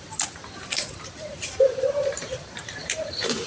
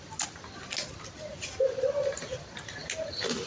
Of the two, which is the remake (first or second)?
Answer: first